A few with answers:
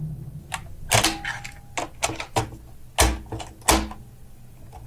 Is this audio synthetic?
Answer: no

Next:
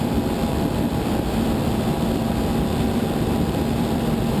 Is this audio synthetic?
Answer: yes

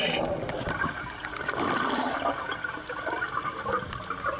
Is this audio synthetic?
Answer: no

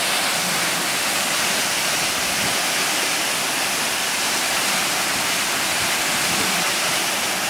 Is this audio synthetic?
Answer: no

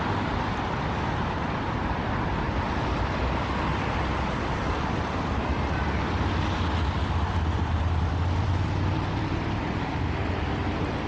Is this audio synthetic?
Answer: yes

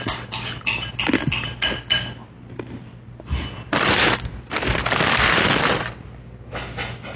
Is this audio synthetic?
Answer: no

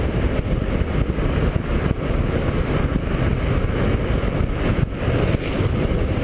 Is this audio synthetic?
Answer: yes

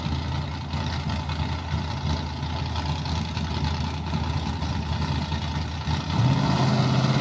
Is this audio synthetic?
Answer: no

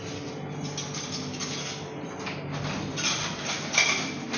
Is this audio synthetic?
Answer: no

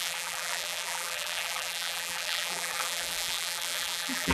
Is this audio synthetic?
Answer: yes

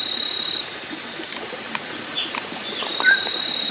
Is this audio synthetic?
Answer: yes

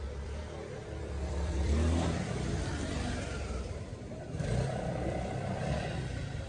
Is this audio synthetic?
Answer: yes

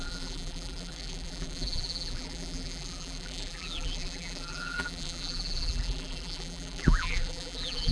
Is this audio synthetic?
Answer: yes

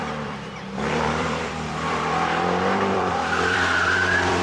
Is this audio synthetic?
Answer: yes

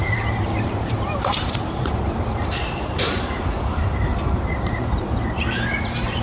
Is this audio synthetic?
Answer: yes